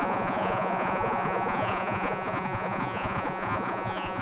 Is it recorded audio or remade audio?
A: remade